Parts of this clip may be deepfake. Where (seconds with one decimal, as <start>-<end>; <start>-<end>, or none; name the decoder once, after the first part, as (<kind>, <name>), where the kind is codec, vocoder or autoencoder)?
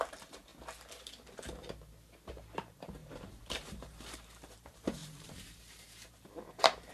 0.0-0.5 (vocoder, BigVGAN v2); 2.3-6.9